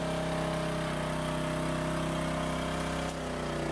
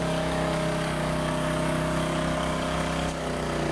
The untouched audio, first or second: first